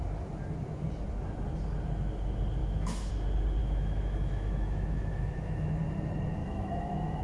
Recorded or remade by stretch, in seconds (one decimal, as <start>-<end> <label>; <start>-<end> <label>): 0.0-2.6 recorded; 2.6-3.1 remade; 3.1-3.6 recorded; 3.6-5.8 remade; 5.8-6.4 recorded; 6.4-7.2 remade